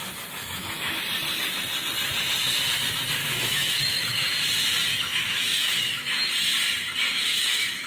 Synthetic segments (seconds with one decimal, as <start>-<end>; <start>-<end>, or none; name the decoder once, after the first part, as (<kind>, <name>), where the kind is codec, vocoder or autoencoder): 0.4-1.0 (autoencoder, DAC-VAE); 3.2-4.3; 4.9-6.3; 7.1-7.9

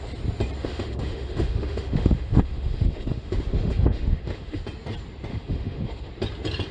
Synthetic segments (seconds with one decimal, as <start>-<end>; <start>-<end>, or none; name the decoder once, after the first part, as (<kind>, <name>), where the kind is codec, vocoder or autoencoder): 0.6-4.6 (autoencoder, DAC-VAE); 5.3-6.1

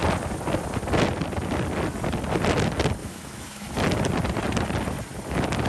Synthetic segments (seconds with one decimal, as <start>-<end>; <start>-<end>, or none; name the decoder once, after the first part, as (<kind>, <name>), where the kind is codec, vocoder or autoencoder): 3.0-3.7 (autoencoder, DAC-VAE)

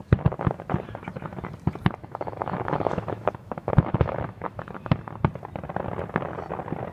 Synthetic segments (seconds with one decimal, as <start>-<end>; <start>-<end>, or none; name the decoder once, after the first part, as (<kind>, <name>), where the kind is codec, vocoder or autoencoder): 2.0-4.9 (autoencoder, DAC-VAE)

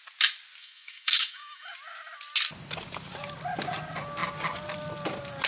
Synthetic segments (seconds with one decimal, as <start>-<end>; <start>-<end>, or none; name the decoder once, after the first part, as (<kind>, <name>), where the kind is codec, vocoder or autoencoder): 0.6-1.7 (autoencoder, DAC-VAE)

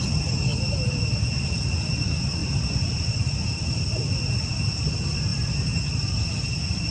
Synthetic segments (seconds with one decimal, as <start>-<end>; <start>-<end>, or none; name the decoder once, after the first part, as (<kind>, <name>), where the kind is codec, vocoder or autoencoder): none

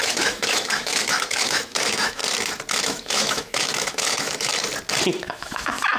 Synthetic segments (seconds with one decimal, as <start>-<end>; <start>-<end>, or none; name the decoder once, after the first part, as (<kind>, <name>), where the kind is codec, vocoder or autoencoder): 0.0-2.2 (autoencoder, DAC-VAE); 2.8-4.5; 5.2-6.0

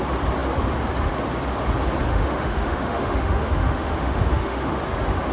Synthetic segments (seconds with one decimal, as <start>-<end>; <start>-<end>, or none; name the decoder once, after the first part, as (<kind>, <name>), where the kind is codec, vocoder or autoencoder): 2.1-4.8 (autoencoder, DAC-VAE)